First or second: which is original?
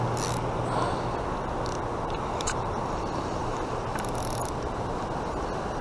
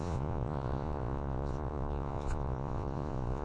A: first